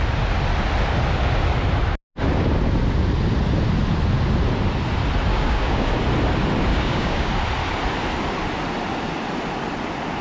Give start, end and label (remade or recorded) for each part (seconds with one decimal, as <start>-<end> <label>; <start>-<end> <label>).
0.0-5.3 recorded; 5.3-5.9 remade; 5.9-6.7 recorded; 6.7-7.3 remade; 7.3-10.2 recorded